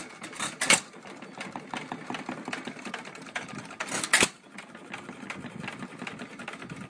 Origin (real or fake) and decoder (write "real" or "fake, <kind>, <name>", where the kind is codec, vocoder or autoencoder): real